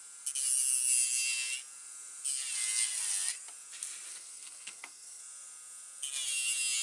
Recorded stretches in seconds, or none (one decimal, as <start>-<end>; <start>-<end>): 0.0-4.1; 5.2-6.8